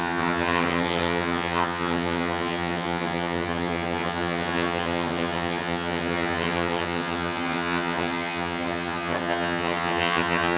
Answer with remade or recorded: remade